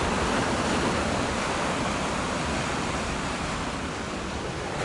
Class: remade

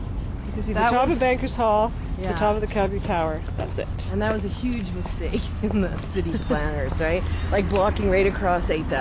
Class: recorded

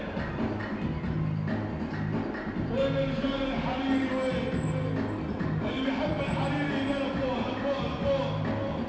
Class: recorded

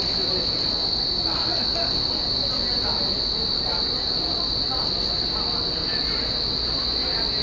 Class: recorded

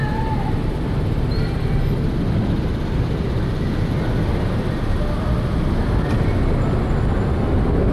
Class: recorded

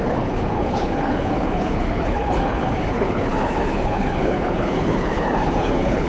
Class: remade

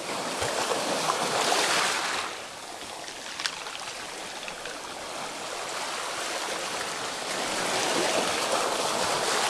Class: recorded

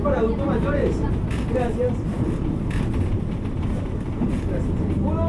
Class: recorded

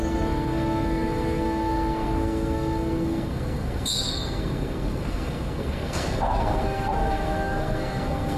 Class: remade